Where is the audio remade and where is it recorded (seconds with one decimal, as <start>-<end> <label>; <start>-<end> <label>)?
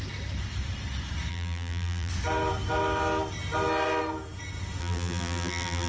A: 0.0-1.3 recorded; 1.3-2.1 remade; 2.1-4.8 recorded; 4.8-5.9 remade